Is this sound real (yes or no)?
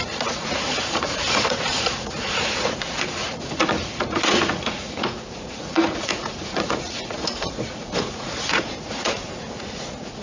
no